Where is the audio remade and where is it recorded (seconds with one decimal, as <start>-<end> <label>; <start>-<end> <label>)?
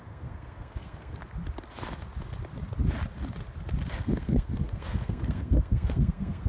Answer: 0.0-1.2 remade; 1.2-3.9 recorded; 3.9-6.5 remade